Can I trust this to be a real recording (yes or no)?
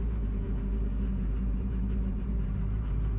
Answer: no